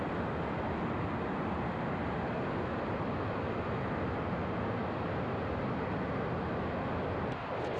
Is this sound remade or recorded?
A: recorded